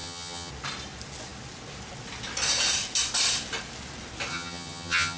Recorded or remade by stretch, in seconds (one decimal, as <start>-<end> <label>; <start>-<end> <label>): 0.0-0.5 remade; 0.5-4.3 recorded; 4.3-5.2 remade